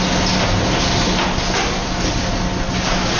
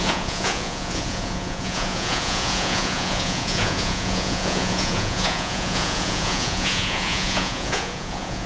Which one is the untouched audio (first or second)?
first